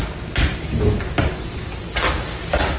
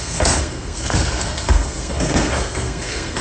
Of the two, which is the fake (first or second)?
second